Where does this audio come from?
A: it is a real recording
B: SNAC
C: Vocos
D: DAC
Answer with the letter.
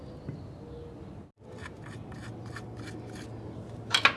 A